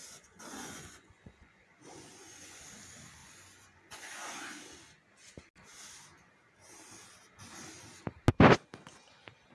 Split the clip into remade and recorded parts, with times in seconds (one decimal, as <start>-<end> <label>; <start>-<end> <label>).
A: 0.0-2.6 remade; 2.6-3.2 recorded; 3.2-4.6 remade; 4.6-9.5 recorded